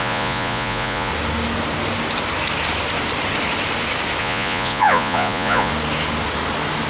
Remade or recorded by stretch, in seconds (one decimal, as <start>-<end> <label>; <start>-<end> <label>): 0.0-1.1 remade; 1.1-4.2 recorded; 4.2-5.7 remade; 5.7-6.9 recorded